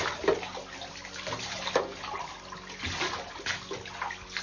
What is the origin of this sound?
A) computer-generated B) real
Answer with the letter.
B